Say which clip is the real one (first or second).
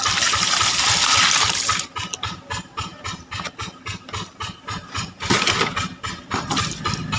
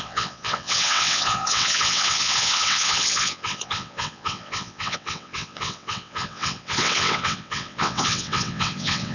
first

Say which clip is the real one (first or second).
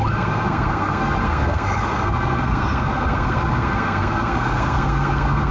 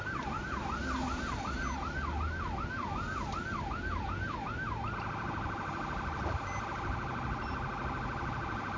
second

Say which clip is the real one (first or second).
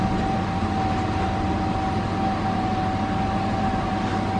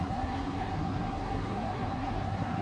first